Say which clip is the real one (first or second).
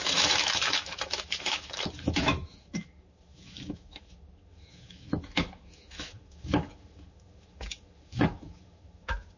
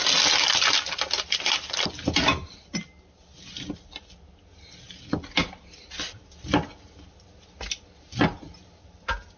second